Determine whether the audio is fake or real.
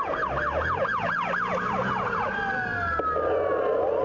real